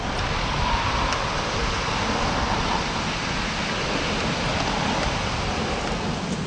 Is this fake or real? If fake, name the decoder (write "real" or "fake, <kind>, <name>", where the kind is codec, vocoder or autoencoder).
real